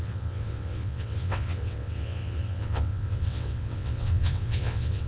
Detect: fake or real fake